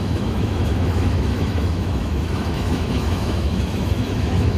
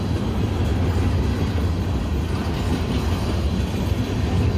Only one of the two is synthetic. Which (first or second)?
first